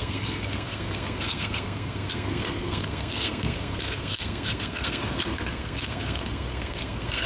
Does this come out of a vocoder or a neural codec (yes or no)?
yes